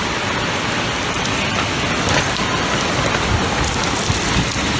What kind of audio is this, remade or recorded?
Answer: recorded